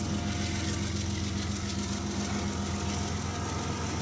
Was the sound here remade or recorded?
recorded